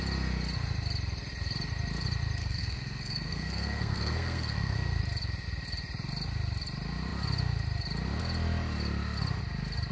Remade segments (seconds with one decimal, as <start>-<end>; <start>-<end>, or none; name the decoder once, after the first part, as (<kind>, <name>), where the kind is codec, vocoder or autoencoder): 2.4-5.0 (codec, SNAC)